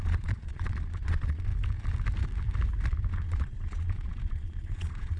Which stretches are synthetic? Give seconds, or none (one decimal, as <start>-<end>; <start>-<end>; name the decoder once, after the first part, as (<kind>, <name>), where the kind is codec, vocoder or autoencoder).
0.0-1.5 (vocoder, Vocos); 3.1-5.2